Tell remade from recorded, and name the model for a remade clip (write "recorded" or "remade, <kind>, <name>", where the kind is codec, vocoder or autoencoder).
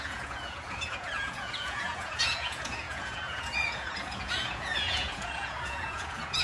remade, vocoder, Vocos